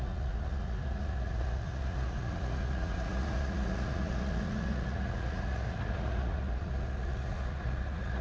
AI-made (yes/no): yes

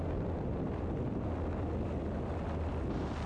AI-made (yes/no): no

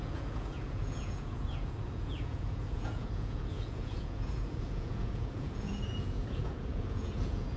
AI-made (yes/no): yes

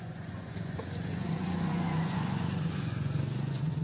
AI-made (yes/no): yes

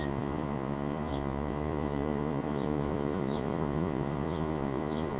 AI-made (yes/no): yes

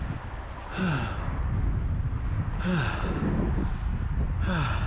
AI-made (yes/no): no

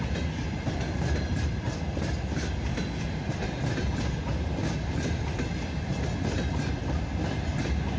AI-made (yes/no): no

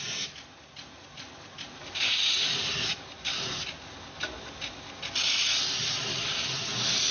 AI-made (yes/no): no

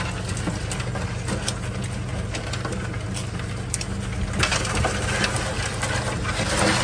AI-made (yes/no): no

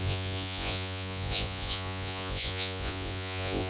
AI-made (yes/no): yes